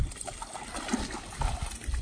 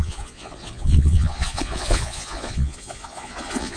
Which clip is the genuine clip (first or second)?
first